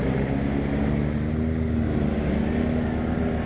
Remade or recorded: recorded